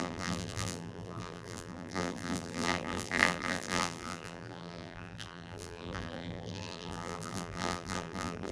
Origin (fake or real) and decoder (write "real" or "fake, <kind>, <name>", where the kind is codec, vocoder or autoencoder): fake, vocoder, BigVGAN v2